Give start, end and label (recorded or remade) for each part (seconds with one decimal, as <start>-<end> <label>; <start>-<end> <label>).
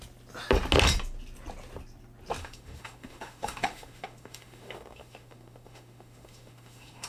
0.0-2.4 recorded; 2.4-7.1 remade